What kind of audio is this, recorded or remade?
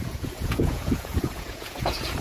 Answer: remade